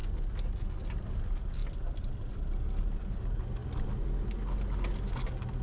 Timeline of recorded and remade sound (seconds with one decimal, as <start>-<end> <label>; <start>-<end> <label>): 0.0-5.6 recorded